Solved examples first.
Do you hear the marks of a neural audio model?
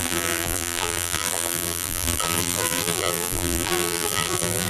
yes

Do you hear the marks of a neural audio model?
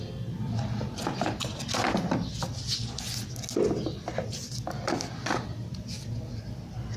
no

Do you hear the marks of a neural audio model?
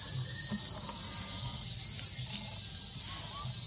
no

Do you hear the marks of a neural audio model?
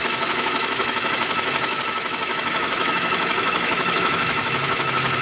yes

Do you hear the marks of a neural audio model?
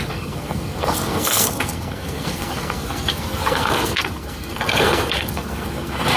yes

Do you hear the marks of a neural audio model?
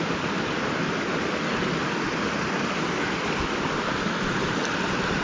no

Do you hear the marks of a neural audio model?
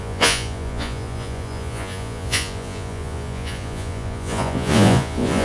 yes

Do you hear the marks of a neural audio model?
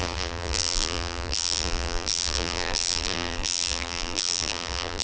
yes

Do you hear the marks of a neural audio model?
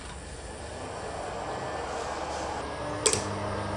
no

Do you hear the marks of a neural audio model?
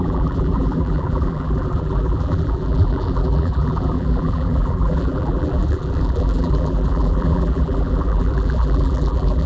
yes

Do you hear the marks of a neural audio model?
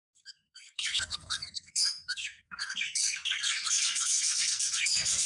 yes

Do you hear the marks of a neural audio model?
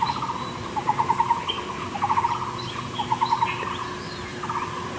no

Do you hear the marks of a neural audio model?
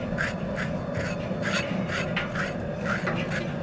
no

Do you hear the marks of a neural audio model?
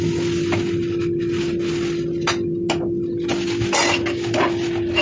no